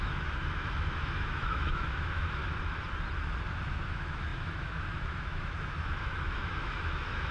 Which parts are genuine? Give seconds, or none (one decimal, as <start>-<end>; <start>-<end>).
2.4-3.5